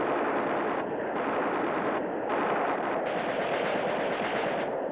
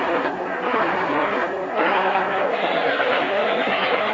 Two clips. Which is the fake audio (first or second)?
second